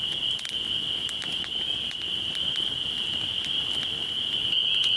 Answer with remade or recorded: recorded